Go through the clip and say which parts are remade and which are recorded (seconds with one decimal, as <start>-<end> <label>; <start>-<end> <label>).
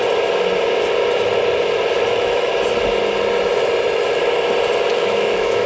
0.0-2.1 recorded; 2.1-2.5 remade; 2.5-4.9 recorded; 4.9-5.7 remade